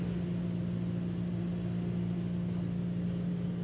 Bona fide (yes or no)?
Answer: yes